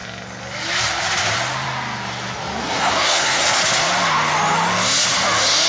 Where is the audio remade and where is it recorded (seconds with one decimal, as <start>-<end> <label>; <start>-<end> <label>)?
0.0-2.6 recorded; 2.6-3.6 remade; 3.6-5.7 recorded